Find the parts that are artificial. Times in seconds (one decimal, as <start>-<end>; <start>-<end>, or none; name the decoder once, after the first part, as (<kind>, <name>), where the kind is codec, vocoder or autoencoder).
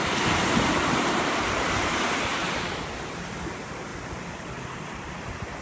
1.0-2.3 (vocoder, BigVGAN v2); 3.1-3.9